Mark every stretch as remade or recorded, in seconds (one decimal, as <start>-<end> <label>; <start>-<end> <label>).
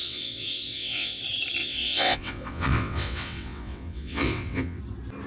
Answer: 0.0-1.2 remade; 1.2-1.6 recorded; 1.6-4.8 remade; 4.8-5.3 recorded